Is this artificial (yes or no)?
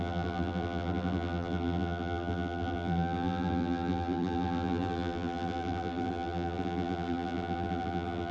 yes